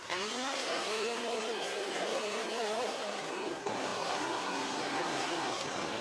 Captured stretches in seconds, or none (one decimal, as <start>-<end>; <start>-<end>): none